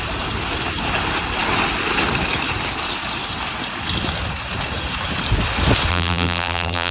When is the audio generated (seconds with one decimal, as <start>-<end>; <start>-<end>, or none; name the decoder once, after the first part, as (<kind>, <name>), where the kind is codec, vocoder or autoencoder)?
5.9-6.9 (vocoder, BigVGAN v2)